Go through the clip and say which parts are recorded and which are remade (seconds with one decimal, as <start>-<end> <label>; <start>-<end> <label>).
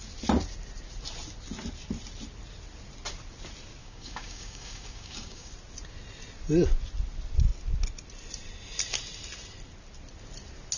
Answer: 0.0-3.8 recorded; 3.8-5.5 remade; 5.5-10.8 recorded